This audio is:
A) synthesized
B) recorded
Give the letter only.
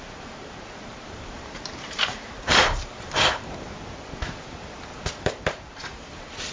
A